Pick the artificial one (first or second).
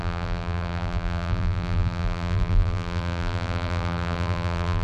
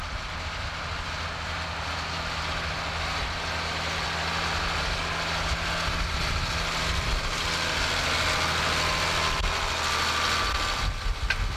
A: first